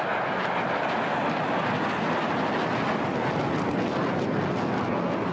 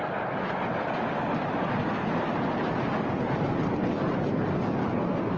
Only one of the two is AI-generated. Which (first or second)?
second